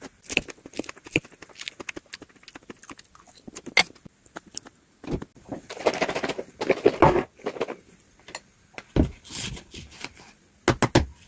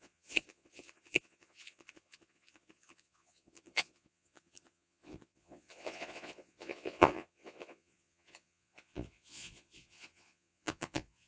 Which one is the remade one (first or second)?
second